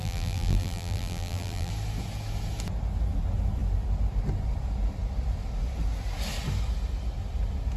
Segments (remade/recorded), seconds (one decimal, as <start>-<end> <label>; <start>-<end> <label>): 0.0-1.7 remade; 1.7-7.8 recorded